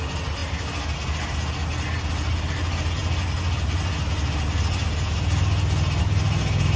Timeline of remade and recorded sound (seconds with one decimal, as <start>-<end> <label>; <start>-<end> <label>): 0.0-6.8 recorded